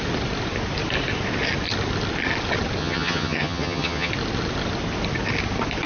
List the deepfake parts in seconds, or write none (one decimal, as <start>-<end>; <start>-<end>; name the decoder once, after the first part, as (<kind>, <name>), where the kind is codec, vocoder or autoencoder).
2.8-4.1 (vocoder, HiFi-GAN)